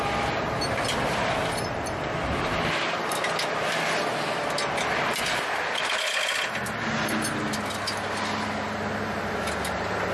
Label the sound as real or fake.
real